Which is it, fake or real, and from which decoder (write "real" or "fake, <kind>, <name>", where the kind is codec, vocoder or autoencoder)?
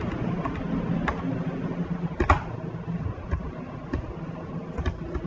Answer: real